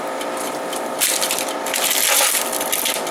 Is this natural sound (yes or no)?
yes